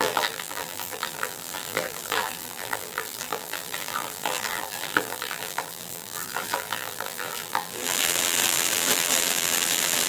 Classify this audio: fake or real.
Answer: fake